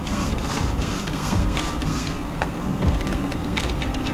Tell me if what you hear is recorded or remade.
remade